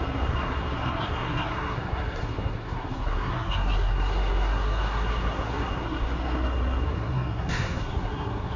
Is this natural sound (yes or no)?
no